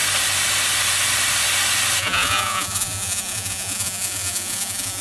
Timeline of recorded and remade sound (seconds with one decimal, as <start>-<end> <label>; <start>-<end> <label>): 0.0-2.0 recorded; 2.0-5.0 remade